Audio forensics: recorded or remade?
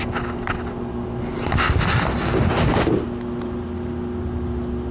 recorded